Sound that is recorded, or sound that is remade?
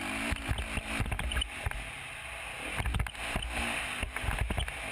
recorded